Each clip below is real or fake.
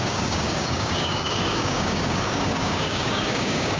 fake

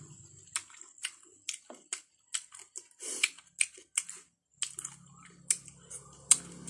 real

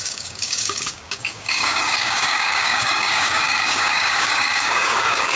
fake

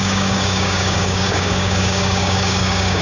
fake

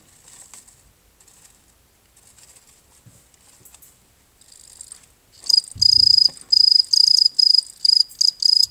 real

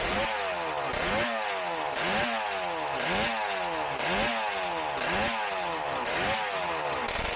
real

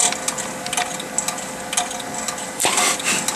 real